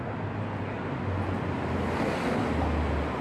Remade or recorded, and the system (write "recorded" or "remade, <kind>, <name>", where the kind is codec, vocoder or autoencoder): recorded